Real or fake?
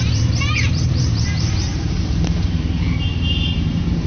fake